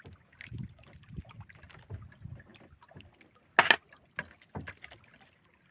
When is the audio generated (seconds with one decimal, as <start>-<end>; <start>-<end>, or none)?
none